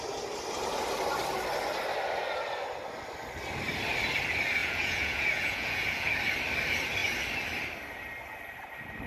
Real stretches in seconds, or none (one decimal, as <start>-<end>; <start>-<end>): 0.0-4.6; 6.1-9.1